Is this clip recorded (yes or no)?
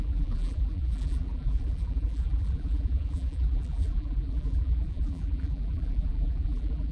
no